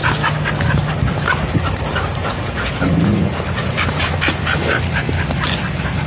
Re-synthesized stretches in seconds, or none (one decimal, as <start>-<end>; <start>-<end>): 2.2-2.8